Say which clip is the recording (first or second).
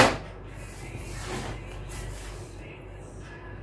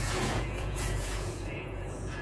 first